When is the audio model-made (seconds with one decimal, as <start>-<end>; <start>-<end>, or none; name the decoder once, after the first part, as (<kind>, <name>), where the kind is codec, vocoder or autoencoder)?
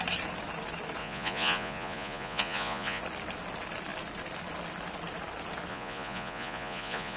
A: 1.0-3.0 (vocoder, Vocos); 5.7-7.2